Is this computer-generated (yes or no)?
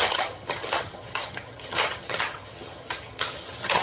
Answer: yes